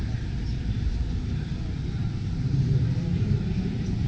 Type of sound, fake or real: fake